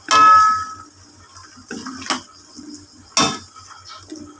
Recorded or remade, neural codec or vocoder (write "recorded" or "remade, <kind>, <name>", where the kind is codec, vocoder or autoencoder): recorded